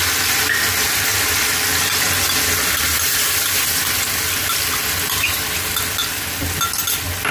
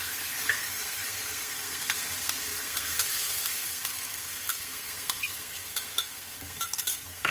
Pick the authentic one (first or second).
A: first